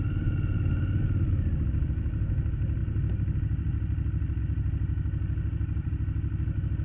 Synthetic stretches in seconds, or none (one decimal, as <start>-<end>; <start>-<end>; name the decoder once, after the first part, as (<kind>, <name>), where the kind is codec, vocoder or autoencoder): none